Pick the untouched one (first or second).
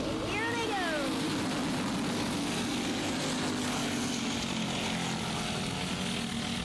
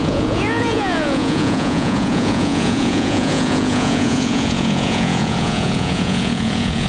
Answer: first